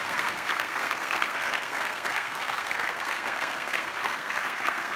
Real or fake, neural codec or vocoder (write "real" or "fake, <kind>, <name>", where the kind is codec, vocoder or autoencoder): fake, codec, SNAC